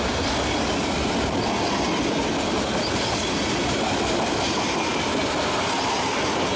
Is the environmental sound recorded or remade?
recorded